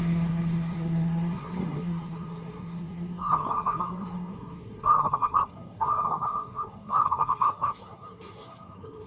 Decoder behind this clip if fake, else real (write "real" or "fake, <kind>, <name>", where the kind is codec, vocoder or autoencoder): fake, codec, SNAC